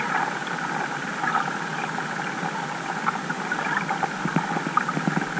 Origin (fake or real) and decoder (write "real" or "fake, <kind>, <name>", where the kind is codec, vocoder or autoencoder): real